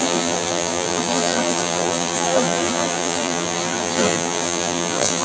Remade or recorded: remade